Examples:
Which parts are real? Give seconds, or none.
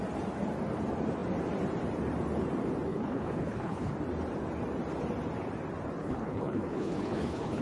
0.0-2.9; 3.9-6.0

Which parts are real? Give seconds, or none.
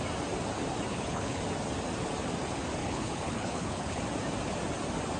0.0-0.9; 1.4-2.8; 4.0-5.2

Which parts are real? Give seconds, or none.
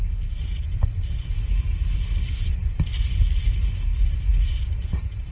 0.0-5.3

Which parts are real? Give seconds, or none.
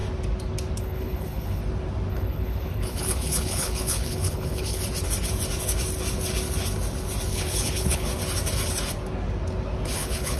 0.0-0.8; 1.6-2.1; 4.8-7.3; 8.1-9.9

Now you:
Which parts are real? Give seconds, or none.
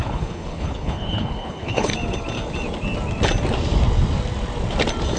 1.9-5.2